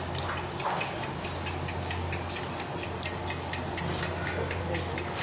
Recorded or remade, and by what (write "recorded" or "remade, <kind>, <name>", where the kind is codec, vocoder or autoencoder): recorded